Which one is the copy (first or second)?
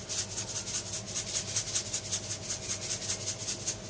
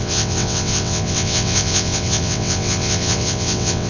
second